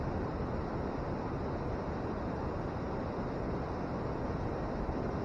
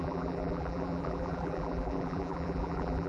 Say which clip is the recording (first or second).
first